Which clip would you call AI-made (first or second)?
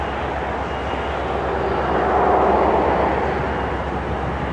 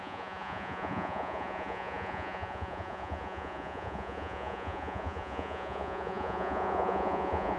second